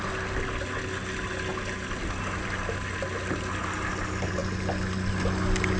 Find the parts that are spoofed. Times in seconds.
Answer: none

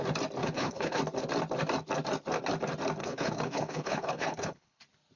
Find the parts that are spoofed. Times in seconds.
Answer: 0.4-1.0 (codec, HILCodec); 3.0-4.8